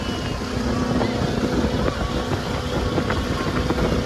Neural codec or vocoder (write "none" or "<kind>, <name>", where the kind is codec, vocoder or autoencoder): none